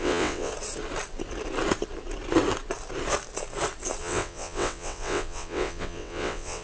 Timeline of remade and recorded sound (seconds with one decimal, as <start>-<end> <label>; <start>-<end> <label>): 0.0-0.5 remade; 0.5-4.0 recorded; 4.0-6.6 remade